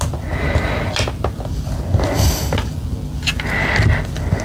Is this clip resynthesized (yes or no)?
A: no